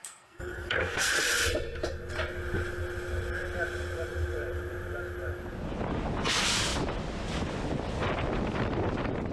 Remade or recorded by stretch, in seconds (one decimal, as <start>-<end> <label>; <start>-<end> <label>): 0.0-1.1 remade; 1.1-9.3 recorded